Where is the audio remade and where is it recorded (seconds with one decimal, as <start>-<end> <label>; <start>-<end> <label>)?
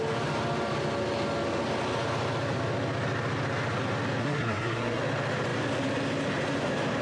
0.0-4.2 recorded; 4.2-5.0 remade; 5.0-7.0 recorded